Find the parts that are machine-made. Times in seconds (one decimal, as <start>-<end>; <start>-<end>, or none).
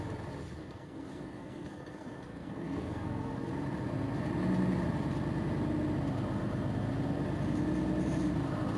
0.5-3.5